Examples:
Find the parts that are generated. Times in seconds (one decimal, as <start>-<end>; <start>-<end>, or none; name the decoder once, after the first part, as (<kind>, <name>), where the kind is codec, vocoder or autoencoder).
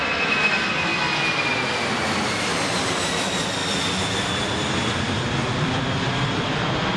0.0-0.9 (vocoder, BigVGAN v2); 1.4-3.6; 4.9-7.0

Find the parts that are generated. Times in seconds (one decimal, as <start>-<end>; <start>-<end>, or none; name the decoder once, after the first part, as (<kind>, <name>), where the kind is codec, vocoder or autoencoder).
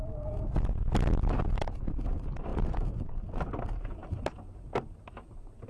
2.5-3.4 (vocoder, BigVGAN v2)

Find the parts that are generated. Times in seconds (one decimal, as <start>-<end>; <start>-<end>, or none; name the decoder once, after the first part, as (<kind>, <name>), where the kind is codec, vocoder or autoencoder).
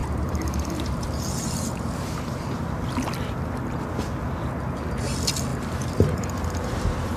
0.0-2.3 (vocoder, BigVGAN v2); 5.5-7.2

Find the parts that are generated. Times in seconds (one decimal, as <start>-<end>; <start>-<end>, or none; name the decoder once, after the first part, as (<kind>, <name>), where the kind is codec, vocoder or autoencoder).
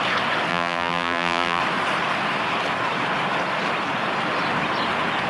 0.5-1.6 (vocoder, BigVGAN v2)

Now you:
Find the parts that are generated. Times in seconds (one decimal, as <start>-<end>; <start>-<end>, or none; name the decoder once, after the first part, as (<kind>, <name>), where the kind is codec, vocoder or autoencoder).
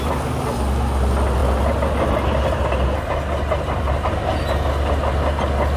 none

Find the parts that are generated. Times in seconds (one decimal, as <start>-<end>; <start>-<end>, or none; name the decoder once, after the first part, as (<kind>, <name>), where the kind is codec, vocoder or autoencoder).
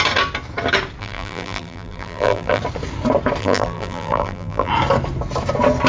1.0-2.6 (vocoder, BigVGAN v2); 3.4-4.7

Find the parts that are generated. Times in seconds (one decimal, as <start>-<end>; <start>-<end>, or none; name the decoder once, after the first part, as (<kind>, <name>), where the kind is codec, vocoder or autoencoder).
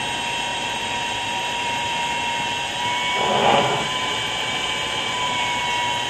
0.5-2.3 (vocoder, BigVGAN v2); 3.4-5.6